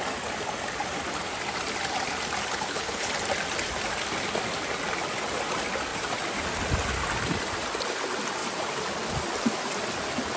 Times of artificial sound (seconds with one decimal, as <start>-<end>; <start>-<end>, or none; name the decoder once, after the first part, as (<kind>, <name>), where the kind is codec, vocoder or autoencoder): 2.5-3.1 (codec, HILCodec)